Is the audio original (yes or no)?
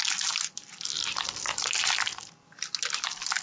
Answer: yes